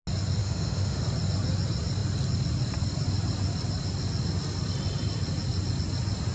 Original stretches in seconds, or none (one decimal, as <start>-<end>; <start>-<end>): 0.0-0.4; 1.0-6.3